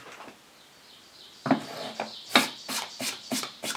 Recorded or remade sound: recorded